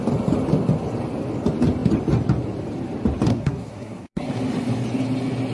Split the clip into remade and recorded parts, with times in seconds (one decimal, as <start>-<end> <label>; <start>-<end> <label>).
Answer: 0.0-3.3 recorded; 3.3-4.3 remade; 4.3-5.5 recorded